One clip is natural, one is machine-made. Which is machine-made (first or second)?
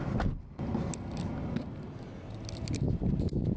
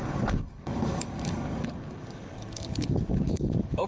second